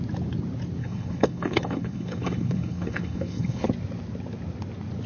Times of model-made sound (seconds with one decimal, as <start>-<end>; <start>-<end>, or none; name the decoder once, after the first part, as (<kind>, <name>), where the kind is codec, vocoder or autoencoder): 0.8-3.7 (codec, HILCodec)